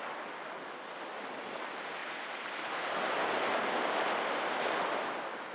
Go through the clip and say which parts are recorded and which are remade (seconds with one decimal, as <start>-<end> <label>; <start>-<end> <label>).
0.0-5.5 recorded